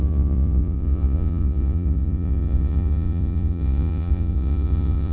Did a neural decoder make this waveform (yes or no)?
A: yes